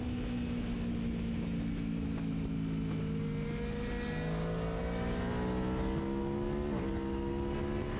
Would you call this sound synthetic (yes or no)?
no